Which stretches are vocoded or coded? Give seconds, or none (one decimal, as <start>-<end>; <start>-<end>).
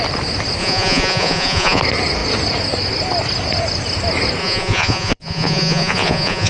0.6-1.8; 4.4-6.5